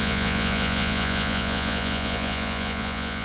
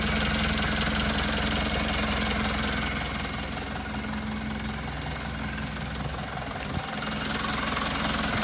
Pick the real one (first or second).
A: second